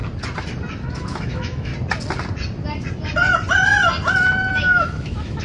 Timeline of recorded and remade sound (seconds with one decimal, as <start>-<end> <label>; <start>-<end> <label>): 0.0-0.9 recorded; 0.9-1.7 remade; 1.7-4.5 recorded; 4.5-5.4 remade